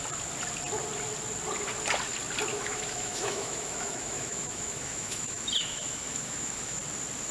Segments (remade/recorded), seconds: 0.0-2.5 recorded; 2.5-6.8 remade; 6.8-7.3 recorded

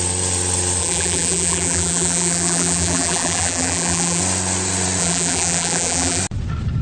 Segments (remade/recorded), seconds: 0.0-0.8 recorded; 0.8-4.2 remade; 4.2-5.0 recorded; 5.0-6.2 remade; 6.2-6.8 recorded

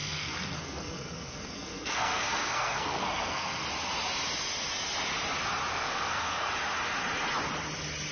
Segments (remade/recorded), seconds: 0.0-3.6 remade; 3.6-5.7 recorded; 5.7-6.5 remade; 6.5-8.1 recorded

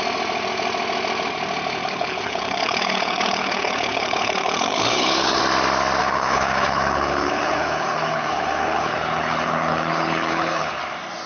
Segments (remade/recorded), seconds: 0.0-1.8 recorded; 1.8-5.4 remade; 5.4-6.0 recorded; 6.0-10.8 remade; 10.8-11.3 recorded

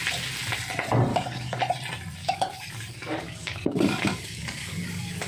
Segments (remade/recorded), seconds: 0.0-1.1 recorded; 1.1-1.6 remade; 1.6-2.2 recorded; 2.2-5.3 remade

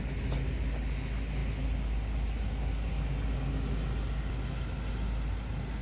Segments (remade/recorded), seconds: 0.0-5.8 recorded

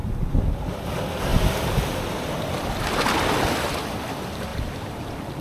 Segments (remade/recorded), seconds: 0.0-0.8 remade; 0.8-4.5 recorded; 4.5-5.4 remade